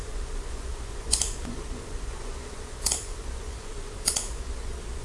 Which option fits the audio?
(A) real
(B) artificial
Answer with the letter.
B